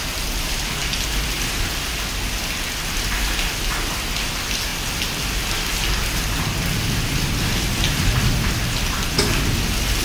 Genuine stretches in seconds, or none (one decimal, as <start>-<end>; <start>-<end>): 0.0-0.8; 1.9-10.0